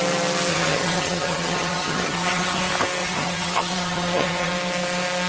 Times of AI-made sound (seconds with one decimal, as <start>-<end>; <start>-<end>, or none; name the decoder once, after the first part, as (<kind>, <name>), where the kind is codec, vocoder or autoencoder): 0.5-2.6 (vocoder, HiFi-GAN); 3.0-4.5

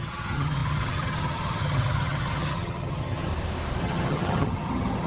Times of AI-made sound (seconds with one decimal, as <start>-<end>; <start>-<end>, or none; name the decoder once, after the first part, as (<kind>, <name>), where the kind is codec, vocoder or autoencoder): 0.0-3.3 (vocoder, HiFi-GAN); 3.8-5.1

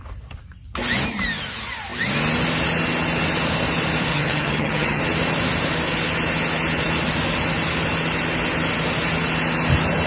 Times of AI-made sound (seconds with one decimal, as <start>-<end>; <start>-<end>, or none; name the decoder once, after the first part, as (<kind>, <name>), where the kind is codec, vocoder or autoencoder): 4.1-5.0 (vocoder, HiFi-GAN)

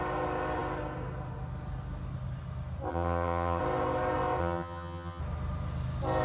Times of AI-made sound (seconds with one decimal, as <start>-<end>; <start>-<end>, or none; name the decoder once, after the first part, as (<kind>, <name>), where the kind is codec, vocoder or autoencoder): 2.9-3.6 (vocoder, HiFi-GAN); 4.4-5.2

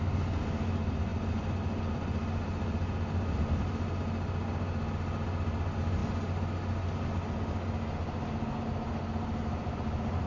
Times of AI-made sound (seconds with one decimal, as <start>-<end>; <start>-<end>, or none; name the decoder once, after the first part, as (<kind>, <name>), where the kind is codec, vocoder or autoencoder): none

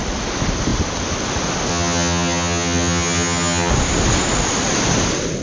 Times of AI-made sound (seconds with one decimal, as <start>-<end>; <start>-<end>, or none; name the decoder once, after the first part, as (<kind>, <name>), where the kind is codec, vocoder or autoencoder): 1.7-3.7 (vocoder, HiFi-GAN)

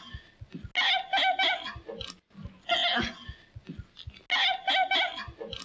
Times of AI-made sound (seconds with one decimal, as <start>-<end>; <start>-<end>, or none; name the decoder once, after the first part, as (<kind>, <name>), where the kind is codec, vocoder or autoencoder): none